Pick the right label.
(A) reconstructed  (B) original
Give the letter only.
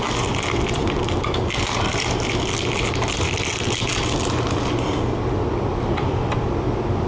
B